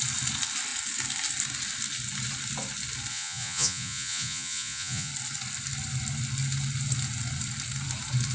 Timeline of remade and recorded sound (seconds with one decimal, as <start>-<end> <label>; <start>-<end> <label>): 0.0-3.1 recorded; 3.1-5.1 remade; 5.1-8.3 recorded